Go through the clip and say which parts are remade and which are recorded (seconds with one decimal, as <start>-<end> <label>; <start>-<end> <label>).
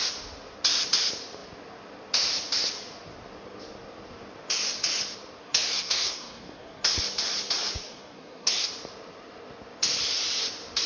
0.0-5.4 recorded; 5.4-7.0 remade; 7.0-7.8 recorded; 7.8-8.7 remade; 8.7-10.9 recorded